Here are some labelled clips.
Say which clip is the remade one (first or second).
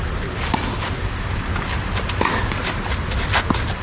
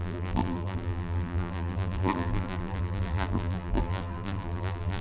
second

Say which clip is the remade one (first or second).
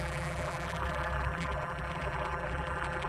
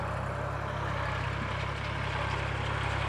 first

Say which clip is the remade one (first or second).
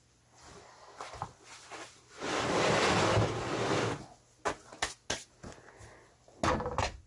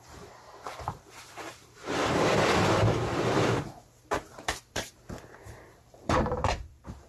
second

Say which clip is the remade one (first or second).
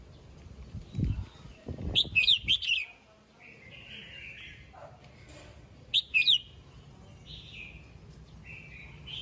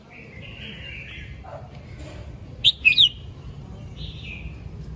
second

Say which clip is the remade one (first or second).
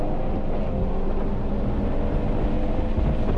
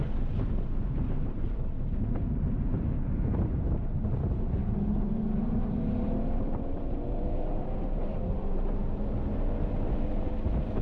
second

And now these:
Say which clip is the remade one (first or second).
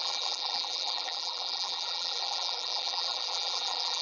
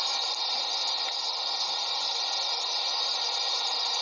first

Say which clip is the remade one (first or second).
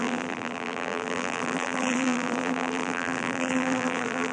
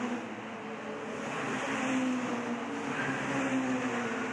first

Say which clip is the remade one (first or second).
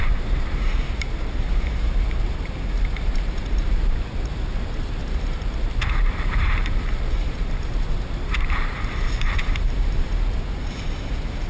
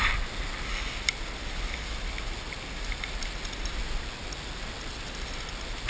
first